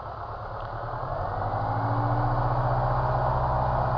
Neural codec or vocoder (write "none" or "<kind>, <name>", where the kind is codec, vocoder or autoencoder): none